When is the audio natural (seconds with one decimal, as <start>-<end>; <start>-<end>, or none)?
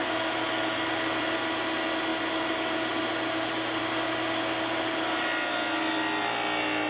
0.0-6.9